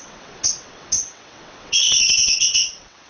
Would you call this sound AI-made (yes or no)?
yes